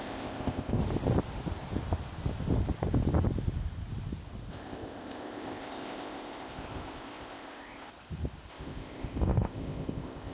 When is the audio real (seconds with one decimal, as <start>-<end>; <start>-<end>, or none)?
0.8-4.5; 7.9-8.5